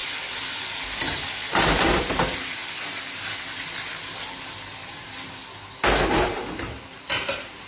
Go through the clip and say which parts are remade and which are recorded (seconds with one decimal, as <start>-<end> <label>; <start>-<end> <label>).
0.0-5.4 remade; 5.4-6.1 recorded; 6.1-7.7 remade